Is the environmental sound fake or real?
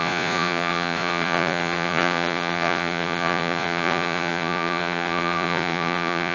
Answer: fake